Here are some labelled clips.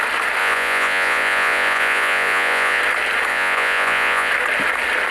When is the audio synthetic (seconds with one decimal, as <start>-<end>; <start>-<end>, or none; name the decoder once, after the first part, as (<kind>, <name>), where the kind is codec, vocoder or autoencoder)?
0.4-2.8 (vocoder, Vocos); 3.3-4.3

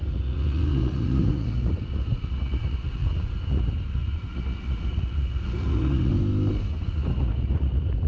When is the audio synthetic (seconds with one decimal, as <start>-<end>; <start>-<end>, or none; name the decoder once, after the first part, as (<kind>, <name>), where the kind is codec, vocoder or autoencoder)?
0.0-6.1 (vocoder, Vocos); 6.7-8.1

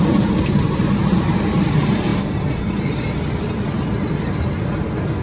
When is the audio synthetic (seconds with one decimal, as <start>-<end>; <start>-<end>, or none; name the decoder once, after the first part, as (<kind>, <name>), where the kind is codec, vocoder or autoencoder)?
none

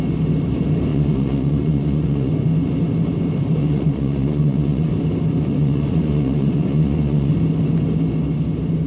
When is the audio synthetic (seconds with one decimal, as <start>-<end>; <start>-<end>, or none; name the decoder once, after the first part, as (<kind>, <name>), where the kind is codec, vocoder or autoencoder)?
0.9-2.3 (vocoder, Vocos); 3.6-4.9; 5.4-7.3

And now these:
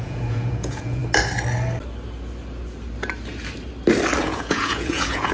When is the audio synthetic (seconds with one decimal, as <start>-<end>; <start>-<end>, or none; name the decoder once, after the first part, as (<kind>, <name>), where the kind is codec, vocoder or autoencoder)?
0.0-1.0 (vocoder, Vocos); 4.2-5.3